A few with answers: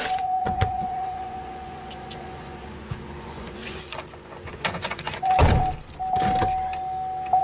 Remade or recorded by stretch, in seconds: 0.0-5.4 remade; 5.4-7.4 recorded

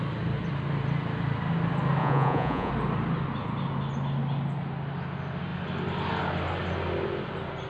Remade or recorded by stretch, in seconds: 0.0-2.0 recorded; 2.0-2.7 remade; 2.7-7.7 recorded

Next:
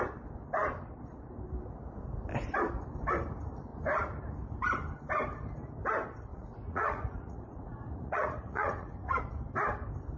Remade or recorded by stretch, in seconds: 0.0-6.3 recorded; 6.3-9.2 remade; 9.2-10.2 recorded

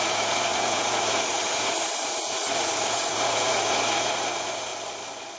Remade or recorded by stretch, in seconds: 0.0-4.7 remade; 4.7-5.4 recorded